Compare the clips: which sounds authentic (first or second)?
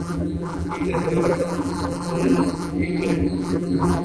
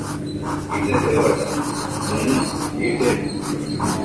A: second